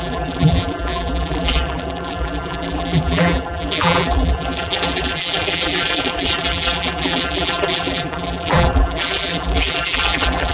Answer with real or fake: fake